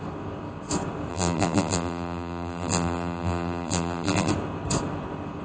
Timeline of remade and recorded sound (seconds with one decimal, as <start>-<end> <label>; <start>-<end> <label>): 0.0-1.1 recorded; 1.1-4.3 remade; 4.3-5.4 recorded